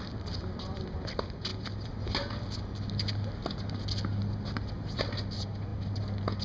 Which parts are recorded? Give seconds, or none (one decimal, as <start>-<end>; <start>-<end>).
0.0-6.4